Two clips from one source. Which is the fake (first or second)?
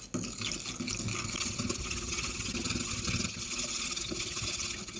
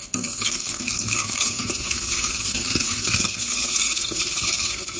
second